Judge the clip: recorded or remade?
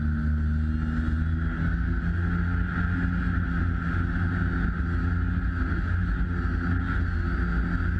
recorded